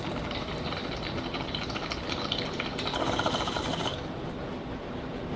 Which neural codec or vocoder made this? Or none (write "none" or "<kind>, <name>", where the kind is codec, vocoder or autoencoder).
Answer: none